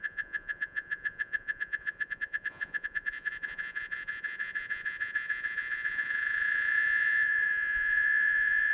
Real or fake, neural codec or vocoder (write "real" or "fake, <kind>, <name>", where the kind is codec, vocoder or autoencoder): fake, vocoder, Vocos